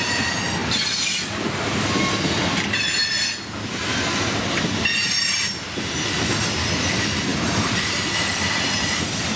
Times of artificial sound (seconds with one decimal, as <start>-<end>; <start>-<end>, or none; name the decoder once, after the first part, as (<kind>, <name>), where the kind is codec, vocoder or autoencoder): 7.3-9.4 (vocoder, BigVGAN v2)